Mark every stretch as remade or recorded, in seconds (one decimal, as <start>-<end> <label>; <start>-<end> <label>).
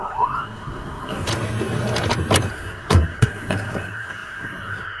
0.0-1.3 remade; 1.3-2.5 recorded; 2.5-5.0 remade